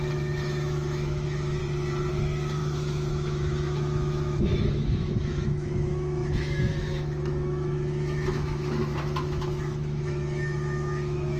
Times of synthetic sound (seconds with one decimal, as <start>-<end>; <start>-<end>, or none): 0.0-1.6; 2.1-11.4